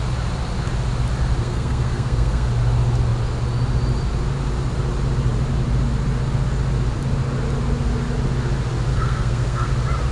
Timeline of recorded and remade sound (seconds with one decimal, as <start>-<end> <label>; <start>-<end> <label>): 0.0-1.4 recorded; 1.4-2.5 remade; 2.5-8.9 recorded; 8.9-9.7 remade; 9.7-10.1 recorded